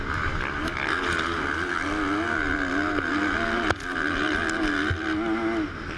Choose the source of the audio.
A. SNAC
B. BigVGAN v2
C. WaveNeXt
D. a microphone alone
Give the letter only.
D